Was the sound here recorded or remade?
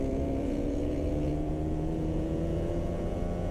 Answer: remade